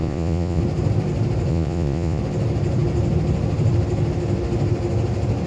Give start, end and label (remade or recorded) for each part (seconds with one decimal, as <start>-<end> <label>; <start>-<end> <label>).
0.0-0.6 remade; 0.6-1.5 recorded; 1.5-2.2 remade; 2.2-5.5 recorded